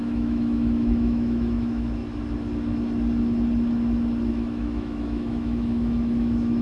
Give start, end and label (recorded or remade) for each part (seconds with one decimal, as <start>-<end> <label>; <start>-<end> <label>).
0.0-2.0 remade; 2.0-4.3 recorded; 4.3-6.6 remade